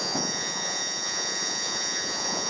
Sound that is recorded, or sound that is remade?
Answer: remade